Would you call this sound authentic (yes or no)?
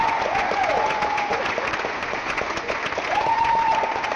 no